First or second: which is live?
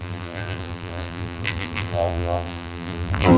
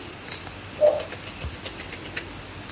second